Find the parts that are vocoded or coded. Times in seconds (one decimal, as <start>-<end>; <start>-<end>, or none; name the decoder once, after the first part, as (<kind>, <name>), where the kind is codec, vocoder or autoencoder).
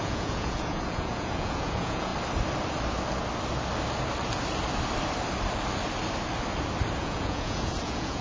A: 0.0-2.1 (vocoder, Vocos); 7.0-8.2